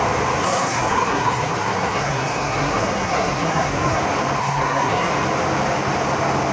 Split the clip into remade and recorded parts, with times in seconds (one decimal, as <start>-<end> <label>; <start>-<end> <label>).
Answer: 0.0-0.4 recorded; 0.4-4.0 remade; 4.0-4.4 recorded; 4.4-5.1 remade; 5.1-6.5 recorded